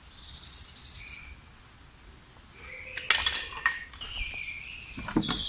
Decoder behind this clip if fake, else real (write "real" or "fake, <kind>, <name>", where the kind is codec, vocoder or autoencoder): real